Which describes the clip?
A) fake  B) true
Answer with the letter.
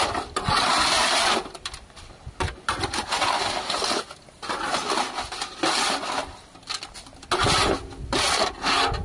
B